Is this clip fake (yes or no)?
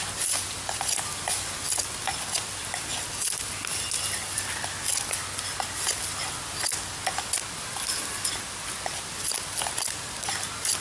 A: no